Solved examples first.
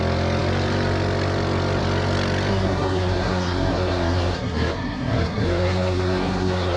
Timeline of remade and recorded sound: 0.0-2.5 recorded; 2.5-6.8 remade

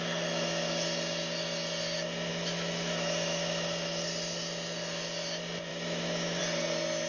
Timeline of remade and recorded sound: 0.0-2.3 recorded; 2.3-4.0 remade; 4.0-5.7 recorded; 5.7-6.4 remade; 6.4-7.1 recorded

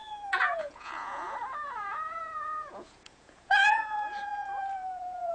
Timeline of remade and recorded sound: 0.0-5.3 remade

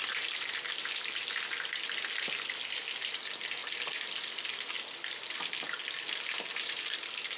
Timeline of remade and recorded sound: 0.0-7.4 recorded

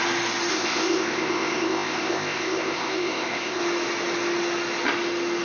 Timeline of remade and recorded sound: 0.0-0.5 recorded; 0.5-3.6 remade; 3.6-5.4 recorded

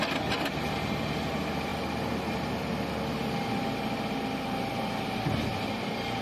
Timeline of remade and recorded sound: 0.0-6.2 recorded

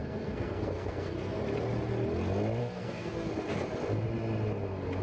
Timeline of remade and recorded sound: 0.0-1.4 remade; 1.4-2.6 recorded; 2.6-3.3 remade; 3.3-5.0 recorded

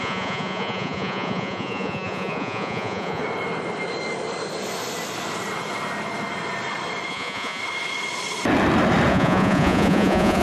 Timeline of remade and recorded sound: 0.0-3.2 remade; 3.2-7.1 recorded; 7.1-7.6 remade; 7.6-9.1 recorded; 9.1-10.4 remade